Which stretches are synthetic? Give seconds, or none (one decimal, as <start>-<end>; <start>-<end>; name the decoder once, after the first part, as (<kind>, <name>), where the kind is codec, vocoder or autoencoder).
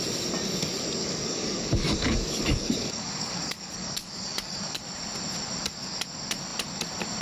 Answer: 1.0-4.8 (codec, DAC)